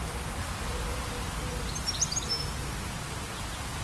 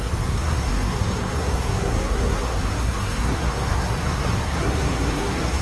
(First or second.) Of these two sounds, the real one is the first